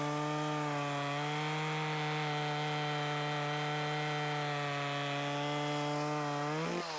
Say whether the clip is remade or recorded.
recorded